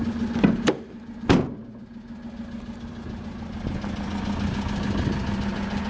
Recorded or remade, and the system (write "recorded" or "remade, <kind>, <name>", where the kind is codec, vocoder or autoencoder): recorded